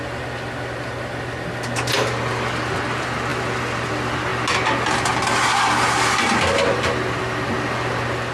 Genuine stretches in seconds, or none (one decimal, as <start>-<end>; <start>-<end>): 0.0-8.3